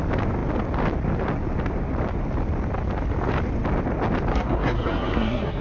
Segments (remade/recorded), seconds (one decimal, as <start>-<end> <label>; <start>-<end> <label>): 0.0-4.3 recorded; 4.3-5.6 remade